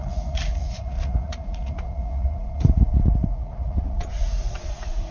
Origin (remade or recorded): remade